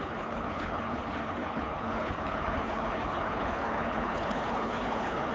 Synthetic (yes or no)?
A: yes